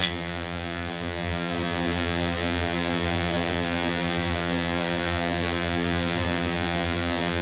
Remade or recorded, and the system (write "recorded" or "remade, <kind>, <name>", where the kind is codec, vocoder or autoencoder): remade, vocoder, BigVGAN v2